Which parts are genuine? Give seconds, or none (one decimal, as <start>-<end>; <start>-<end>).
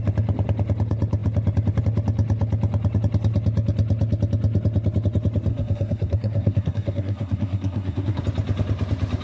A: 0.0-5.5; 8.2-9.2